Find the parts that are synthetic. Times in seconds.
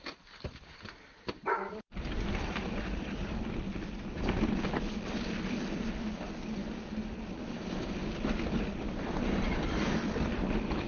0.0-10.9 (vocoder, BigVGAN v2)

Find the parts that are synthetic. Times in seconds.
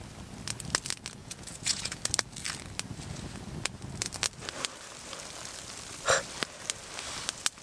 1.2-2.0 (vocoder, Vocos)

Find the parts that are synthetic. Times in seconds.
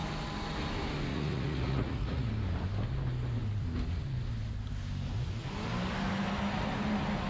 1.1-2.3 (vocoder, Vocos)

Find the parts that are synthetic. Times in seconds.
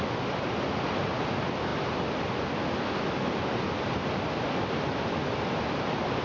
none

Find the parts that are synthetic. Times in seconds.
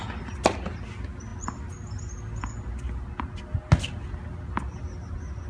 none